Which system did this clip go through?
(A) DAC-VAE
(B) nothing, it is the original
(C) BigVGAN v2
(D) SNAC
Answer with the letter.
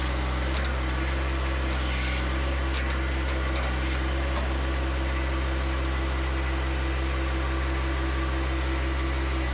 B